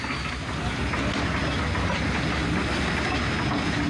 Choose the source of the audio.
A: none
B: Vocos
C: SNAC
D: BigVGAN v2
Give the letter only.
A